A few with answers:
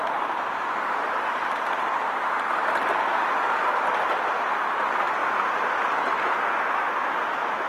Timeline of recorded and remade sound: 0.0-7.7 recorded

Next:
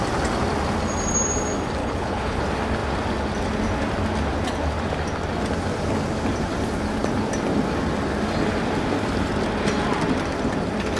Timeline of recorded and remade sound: 0.0-1.8 recorded; 1.8-2.4 remade; 2.4-11.0 recorded

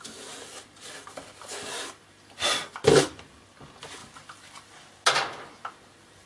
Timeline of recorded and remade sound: 0.0-6.3 recorded

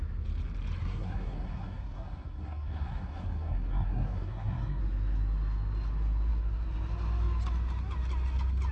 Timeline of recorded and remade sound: 0.0-0.8 recorded; 0.8-4.8 remade; 4.8-8.7 recorded